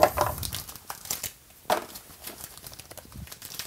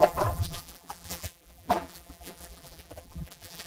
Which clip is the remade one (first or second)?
second